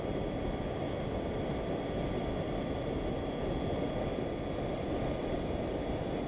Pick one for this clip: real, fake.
real